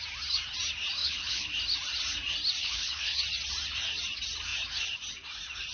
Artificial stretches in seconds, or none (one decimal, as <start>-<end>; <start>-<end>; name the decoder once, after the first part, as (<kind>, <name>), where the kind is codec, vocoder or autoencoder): 1.0-1.5 (codec, HILCodec); 2.6-3.2